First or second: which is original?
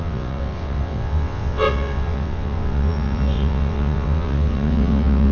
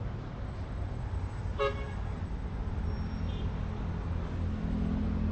second